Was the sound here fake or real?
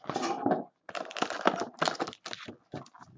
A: real